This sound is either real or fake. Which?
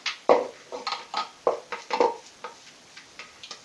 real